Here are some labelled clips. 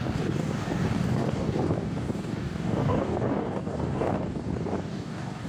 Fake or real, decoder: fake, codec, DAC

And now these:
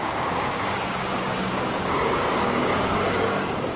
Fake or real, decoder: fake, codec, DAC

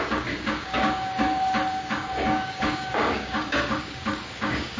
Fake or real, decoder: fake, codec, DAC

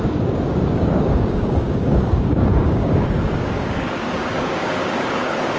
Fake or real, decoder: fake, codec, DAC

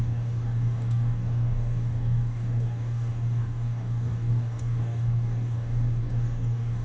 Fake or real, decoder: fake, codec, DAC